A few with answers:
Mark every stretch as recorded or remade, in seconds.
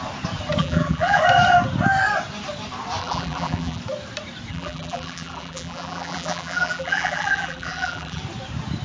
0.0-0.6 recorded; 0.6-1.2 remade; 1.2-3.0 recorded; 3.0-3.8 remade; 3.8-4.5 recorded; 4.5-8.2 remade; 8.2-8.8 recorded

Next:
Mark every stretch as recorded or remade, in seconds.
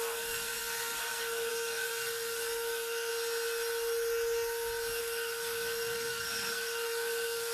0.0-3.1 remade; 3.1-5.0 recorded; 5.0-7.5 remade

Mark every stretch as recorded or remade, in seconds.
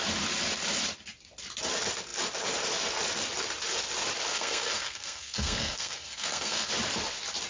0.0-4.3 recorded; 4.3-6.7 remade; 6.7-7.5 recorded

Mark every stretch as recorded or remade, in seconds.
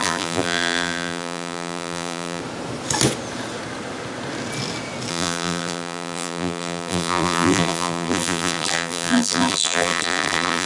0.0-2.4 remade; 2.4-5.1 recorded; 5.1-10.7 remade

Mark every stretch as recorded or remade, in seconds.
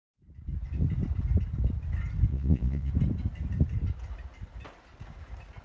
0.0-2.3 recorded; 2.3-2.9 remade; 2.9-5.6 recorded